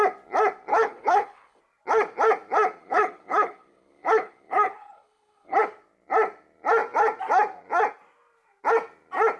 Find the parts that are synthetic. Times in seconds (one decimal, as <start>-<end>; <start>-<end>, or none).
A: 0.7-1.6; 2.8-5.6